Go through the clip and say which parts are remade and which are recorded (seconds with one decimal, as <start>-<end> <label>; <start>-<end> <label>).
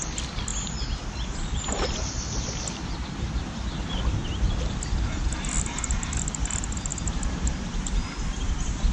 0.0-8.9 recorded